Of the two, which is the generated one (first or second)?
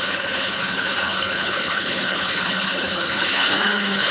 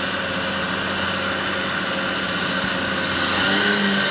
first